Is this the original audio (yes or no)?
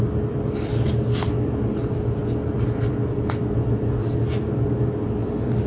yes